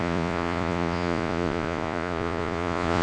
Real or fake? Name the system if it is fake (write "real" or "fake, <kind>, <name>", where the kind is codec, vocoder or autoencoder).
fake, vocoder, Vocos